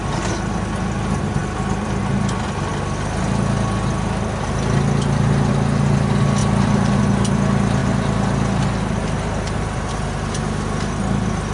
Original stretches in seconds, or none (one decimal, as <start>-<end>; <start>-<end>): 0.0-6.4; 7.0-11.5